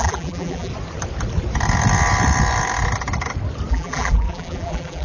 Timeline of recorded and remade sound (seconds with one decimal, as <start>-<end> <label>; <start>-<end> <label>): 0.0-0.7 remade; 0.7-3.7 recorded; 3.7-5.0 remade